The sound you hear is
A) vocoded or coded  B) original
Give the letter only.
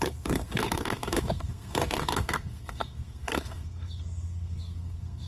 A